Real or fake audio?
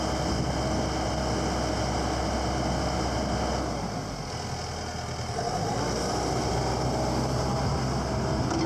real